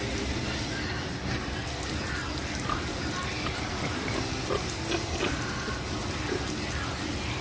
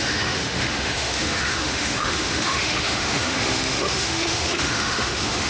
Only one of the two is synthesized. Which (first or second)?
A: second